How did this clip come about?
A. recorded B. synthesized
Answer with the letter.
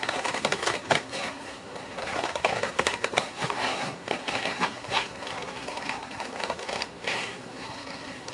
B